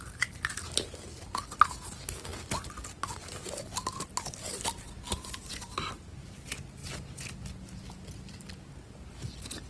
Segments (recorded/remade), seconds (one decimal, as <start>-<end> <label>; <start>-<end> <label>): 0.0-9.7 recorded